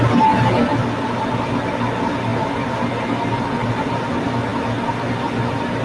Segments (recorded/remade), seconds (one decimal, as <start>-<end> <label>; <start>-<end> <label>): 0.0-5.8 recorded